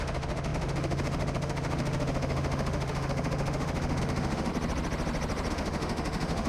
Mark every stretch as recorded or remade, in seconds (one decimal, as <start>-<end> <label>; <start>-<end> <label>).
0.0-4.5 remade; 4.5-5.5 recorded; 5.5-6.5 remade